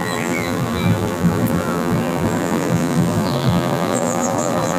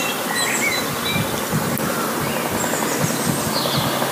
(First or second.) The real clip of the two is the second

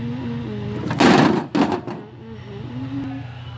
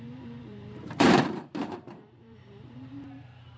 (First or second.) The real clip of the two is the first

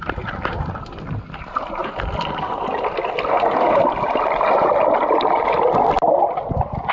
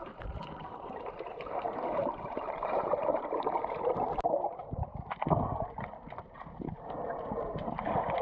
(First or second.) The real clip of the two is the first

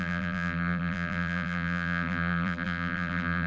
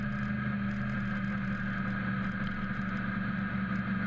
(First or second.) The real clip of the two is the second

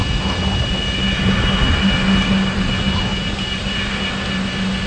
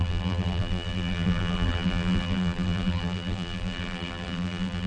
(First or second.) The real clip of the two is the first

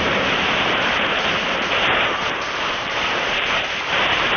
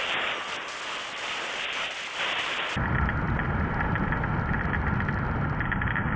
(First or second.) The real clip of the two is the second